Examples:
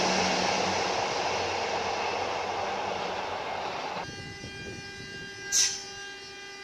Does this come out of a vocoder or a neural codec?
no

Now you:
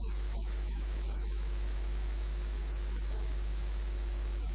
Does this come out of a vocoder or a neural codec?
yes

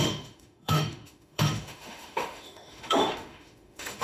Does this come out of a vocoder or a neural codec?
yes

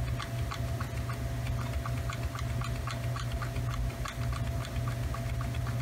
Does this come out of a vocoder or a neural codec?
no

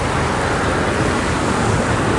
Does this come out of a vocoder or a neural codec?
no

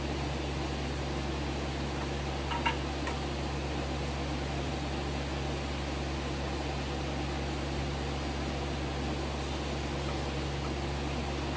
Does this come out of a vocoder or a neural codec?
no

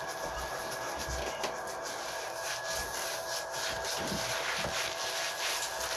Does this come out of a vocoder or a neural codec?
no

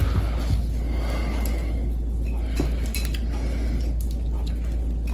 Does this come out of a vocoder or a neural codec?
no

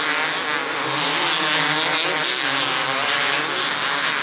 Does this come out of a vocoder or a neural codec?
no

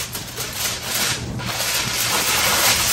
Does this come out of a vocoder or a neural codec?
no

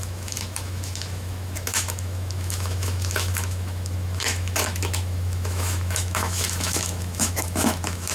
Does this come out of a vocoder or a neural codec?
yes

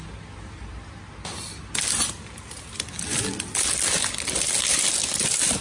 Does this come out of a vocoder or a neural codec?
no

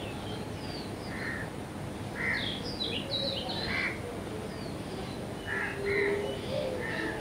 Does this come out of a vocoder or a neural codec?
no